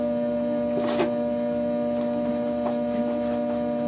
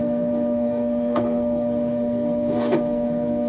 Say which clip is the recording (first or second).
first